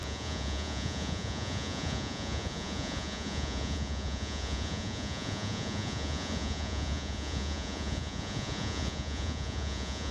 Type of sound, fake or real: fake